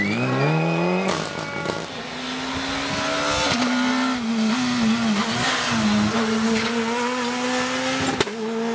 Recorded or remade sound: recorded